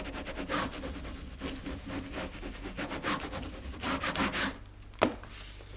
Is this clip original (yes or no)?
yes